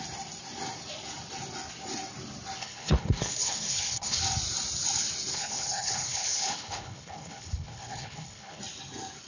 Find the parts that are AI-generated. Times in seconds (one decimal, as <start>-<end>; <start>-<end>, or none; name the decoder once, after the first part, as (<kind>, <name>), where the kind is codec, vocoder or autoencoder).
2.6-4.2 (codec, HILCodec); 5.3-8.6